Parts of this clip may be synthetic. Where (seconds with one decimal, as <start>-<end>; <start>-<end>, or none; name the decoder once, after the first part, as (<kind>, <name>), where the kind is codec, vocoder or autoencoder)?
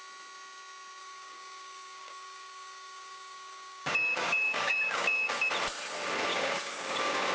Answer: 1.0-5.4 (codec, DAC); 6.3-7.3